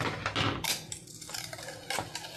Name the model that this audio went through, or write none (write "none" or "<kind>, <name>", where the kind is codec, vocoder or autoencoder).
none